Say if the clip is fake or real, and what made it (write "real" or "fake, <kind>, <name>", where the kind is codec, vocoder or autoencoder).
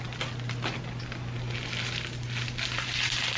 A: real